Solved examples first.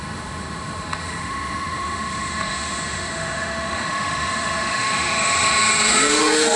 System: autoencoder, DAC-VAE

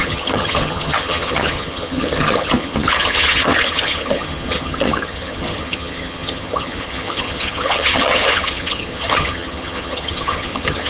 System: vocoder, HiFi-GAN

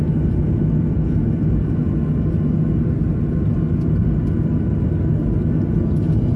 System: none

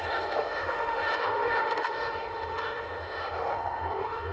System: autoencoder, DAC-VAE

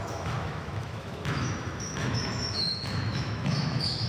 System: autoencoder, DAC-VAE